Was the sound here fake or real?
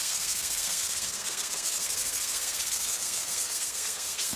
fake